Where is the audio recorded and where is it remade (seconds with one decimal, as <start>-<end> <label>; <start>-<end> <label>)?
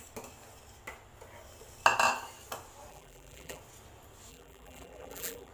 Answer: 0.0-2.9 recorded; 2.9-3.6 remade; 3.6-4.3 recorded; 4.3-5.5 remade